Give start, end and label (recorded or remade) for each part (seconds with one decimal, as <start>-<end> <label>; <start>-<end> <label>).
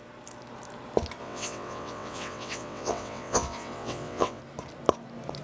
0.0-1.2 recorded; 1.2-4.4 remade; 4.4-5.4 recorded